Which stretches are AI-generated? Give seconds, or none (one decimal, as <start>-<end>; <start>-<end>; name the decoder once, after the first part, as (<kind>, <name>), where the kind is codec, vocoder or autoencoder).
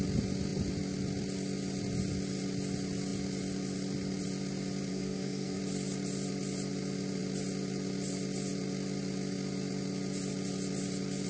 4.9-5.6 (codec, SNAC)